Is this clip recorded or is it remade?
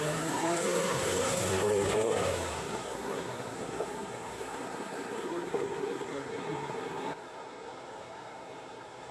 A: remade